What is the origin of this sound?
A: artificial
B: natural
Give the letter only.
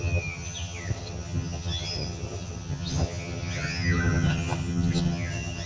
A